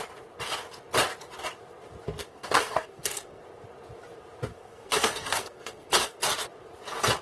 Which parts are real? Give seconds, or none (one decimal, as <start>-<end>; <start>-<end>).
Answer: 0.0-2.2; 3.4-4.5; 6.2-7.2